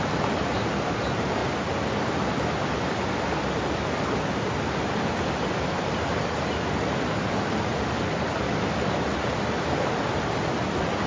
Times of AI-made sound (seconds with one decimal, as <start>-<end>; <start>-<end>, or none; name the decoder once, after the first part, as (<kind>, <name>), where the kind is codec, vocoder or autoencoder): none